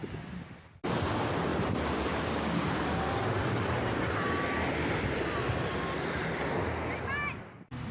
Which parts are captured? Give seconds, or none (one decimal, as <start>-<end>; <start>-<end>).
0.8-1.5; 4.3-7.9